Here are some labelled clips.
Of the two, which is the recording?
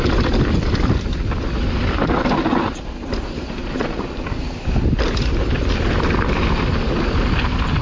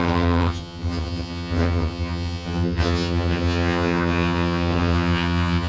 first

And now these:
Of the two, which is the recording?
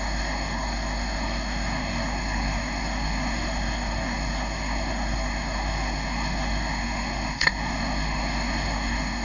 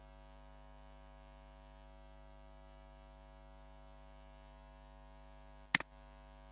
second